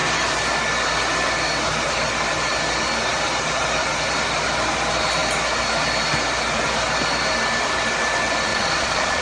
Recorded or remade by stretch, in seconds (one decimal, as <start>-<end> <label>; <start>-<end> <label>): 0.0-8.5 recorded; 8.5-9.2 remade